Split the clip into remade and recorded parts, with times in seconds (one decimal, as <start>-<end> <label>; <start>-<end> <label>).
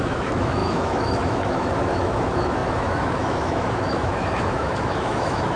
0.0-5.6 remade